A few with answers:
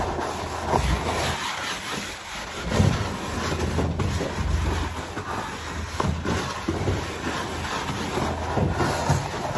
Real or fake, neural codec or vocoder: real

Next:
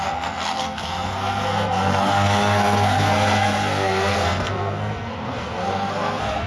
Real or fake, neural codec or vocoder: fake, codec, SNAC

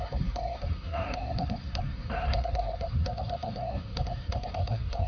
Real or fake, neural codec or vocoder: fake, codec, SNAC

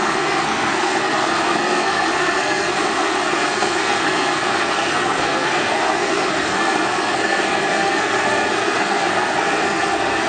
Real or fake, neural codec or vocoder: fake, codec, SNAC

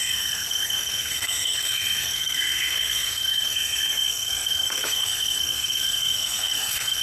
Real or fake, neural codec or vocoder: fake, codec, SNAC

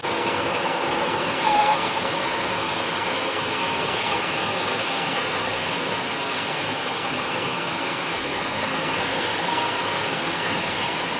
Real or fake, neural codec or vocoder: fake, codec, SNAC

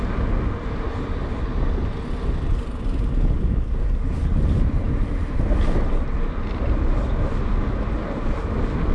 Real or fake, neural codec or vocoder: real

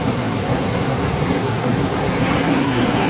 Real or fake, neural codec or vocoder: fake, codec, SNAC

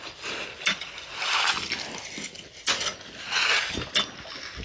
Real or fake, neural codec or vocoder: real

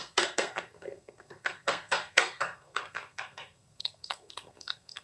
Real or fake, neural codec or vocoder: fake, codec, SNAC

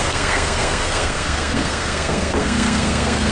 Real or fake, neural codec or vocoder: fake, codec, SNAC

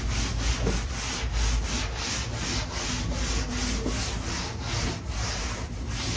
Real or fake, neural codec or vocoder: real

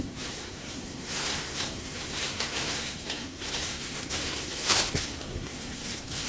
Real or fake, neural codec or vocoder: fake, codec, SNAC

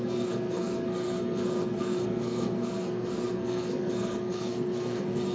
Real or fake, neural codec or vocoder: fake, codec, SNAC